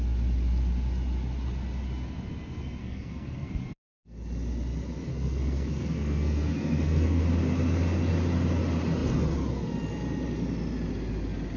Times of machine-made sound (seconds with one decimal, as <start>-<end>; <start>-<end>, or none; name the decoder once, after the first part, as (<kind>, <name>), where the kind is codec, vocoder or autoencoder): 2.8-3.5 (codec, SNAC); 5.1-7.2

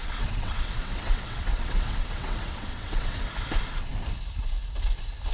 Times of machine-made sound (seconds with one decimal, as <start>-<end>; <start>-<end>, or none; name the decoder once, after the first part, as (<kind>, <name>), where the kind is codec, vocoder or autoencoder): 0.0-3.2 (vocoder, WaveNeXt)